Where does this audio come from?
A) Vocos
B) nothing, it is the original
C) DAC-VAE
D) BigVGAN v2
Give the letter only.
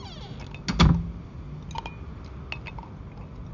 B